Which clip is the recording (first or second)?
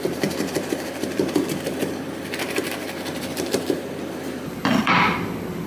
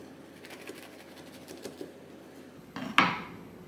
second